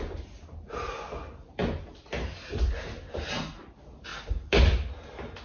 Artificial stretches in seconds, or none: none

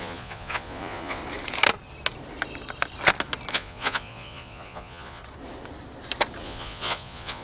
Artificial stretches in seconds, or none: 0.0-1.2 (vocoder, Vocos); 3.5-5.2; 6.4-7.4

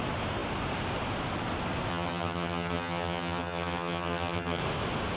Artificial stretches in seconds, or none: 1.9-4.6 (vocoder, HiFi-GAN)

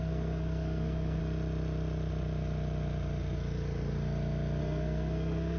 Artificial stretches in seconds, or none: 0.0-1.2 (codec, SNAC); 4.6-5.6

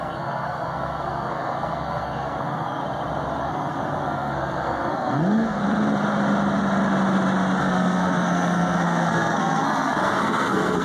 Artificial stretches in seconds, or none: 0.0-2.8 (codec, SNAC); 3.4-5.6; 7.6-10.8

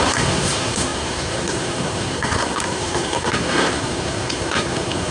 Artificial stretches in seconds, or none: 0.0-5.1 (codec, SNAC)